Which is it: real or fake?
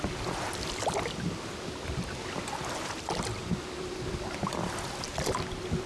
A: real